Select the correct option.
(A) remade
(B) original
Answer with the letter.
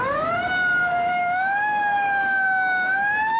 A